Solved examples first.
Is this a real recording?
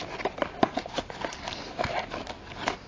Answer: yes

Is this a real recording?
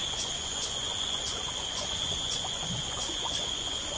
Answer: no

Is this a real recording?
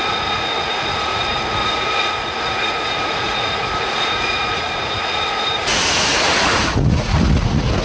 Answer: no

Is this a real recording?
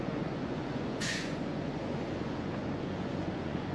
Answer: no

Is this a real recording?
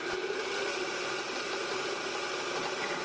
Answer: yes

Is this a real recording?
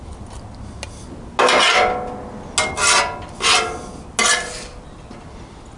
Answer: yes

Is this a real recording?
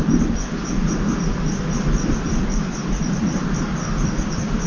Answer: yes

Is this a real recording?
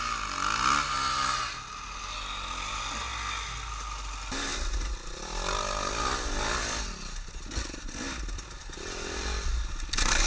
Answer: yes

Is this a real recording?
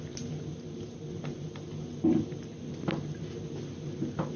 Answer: yes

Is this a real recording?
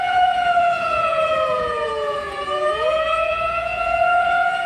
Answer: no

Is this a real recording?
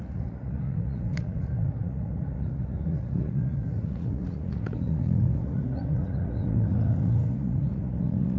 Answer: no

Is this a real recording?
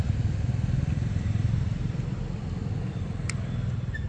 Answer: yes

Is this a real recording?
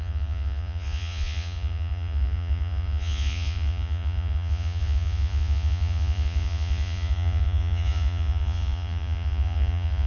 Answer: no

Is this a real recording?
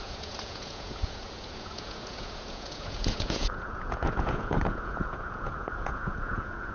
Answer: no